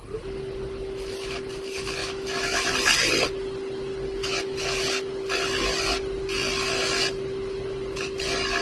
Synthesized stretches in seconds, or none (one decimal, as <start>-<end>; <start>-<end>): 2.0-2.7; 4.2-4.8